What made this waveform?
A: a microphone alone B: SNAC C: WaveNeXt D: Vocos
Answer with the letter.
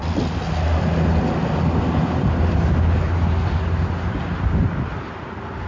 A